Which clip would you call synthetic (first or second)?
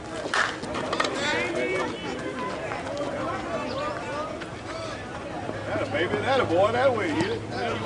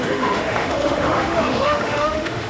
second